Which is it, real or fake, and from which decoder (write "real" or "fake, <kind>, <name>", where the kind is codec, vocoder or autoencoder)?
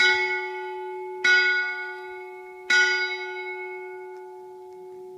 real